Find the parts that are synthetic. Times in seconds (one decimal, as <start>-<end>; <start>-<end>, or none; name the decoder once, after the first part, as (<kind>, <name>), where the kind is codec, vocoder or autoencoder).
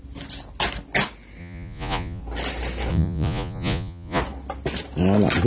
1.4-2.2 (vocoder, Vocos); 2.9-4.2